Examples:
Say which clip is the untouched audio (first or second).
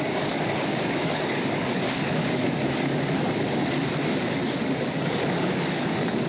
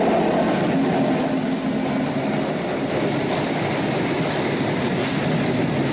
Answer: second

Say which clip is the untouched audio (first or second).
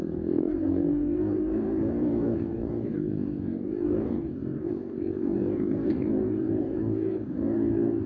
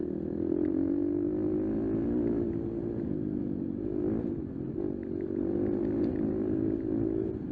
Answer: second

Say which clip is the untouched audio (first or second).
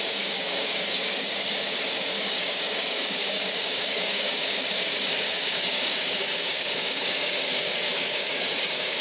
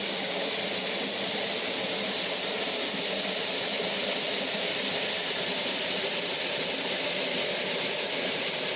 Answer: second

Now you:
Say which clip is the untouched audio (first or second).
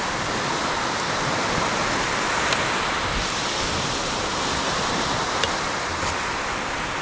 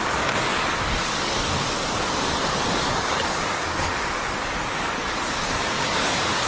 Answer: first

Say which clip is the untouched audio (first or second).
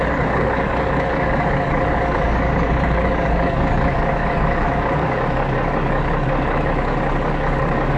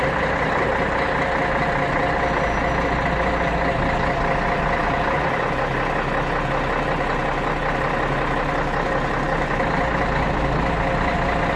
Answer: second